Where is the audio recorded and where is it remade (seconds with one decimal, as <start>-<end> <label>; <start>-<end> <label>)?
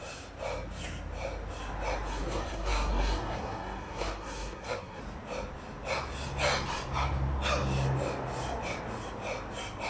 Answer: 0.0-2.1 recorded; 2.1-5.0 remade; 5.0-9.9 recorded